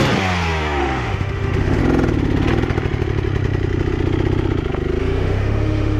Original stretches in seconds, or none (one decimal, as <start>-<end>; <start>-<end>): 0.0-0.8; 1.8-5.0